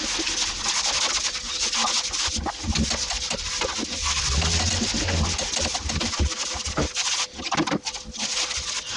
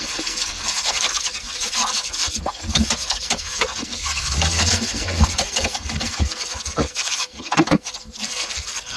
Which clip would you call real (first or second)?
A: first